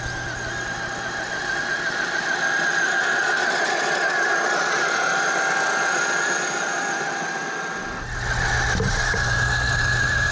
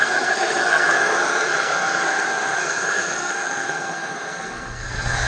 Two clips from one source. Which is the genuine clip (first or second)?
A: first